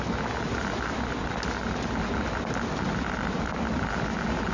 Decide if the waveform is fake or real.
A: real